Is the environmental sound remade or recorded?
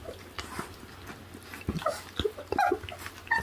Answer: recorded